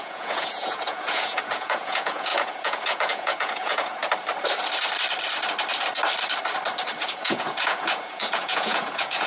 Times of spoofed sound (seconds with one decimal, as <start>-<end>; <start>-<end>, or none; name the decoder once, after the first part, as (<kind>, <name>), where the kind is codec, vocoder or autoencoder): 0.0-4.0 (vocoder, Vocos); 7.0-9.3